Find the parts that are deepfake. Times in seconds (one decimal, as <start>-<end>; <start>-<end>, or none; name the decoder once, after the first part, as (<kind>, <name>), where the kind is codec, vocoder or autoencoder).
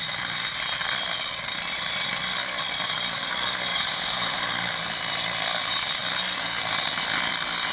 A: 3.7-4.4 (codec, DAC)